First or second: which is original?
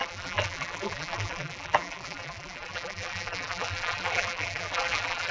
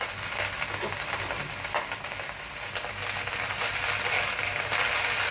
second